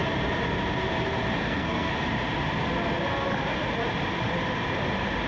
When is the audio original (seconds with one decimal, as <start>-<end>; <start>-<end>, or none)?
0.0-1.4; 1.9-5.3